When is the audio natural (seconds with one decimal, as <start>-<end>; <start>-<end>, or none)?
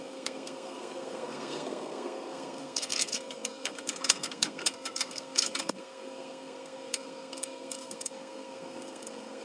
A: none